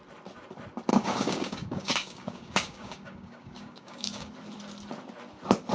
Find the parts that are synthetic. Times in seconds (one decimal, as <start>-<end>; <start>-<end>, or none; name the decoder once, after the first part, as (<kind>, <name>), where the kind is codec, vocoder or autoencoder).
0.9-4.3 (codec, DAC)